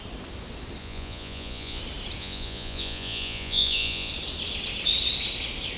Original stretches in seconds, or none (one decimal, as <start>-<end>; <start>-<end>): 0.0-0.8; 1.8-2.2; 4.1-5.8